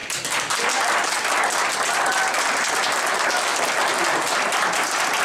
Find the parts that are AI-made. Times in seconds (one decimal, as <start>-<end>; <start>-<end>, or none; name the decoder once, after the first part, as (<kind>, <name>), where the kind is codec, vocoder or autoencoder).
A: 2.7-3.5 (vocoder, BigVGAN v2); 4.0-5.2